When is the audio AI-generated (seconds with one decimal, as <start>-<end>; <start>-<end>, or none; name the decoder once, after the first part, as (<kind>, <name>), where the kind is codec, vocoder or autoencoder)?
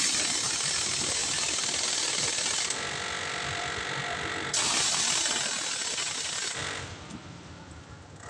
1.2-4.5 (vocoder, BigVGAN v2); 6.6-7.7